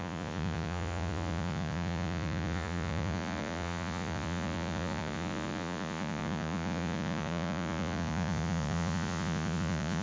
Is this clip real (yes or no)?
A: no